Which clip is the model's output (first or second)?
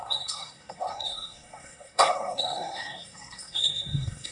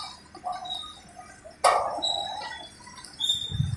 first